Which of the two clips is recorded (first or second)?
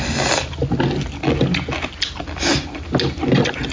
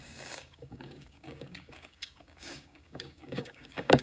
first